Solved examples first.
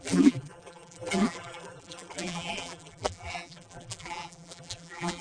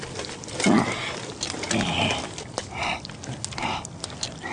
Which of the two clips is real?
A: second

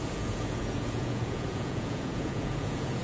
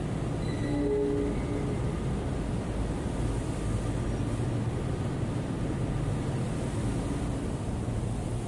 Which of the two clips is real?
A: second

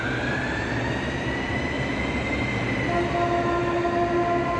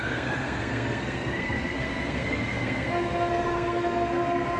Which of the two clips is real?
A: first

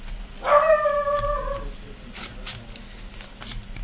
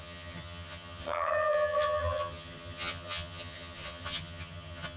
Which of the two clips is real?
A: first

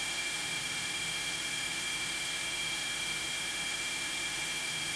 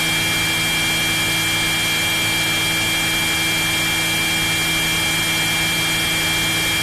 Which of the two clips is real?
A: second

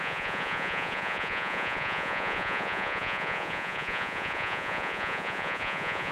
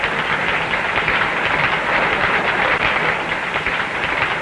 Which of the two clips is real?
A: second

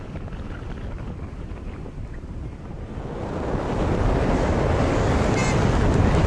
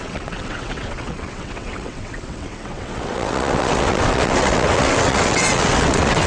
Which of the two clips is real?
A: first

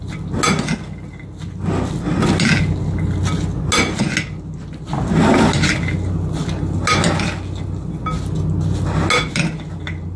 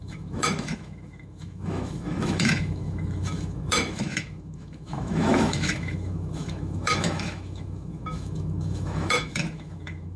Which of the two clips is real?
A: first